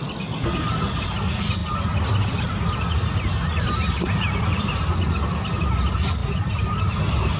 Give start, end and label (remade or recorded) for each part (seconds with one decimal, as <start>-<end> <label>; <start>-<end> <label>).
0.0-6.2 recorded; 6.2-7.0 remade; 7.0-7.4 recorded

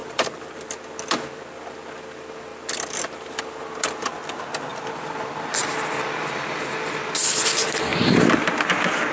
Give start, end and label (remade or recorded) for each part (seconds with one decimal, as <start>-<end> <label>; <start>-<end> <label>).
0.0-0.5 remade; 0.5-4.7 recorded; 4.7-7.0 remade; 7.0-9.1 recorded

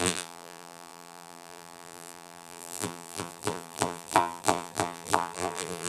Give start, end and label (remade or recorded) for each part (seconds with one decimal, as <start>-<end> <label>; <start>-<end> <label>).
0.0-5.9 remade

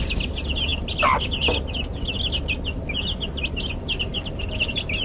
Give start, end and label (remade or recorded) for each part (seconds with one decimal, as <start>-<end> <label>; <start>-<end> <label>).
0.0-5.0 recorded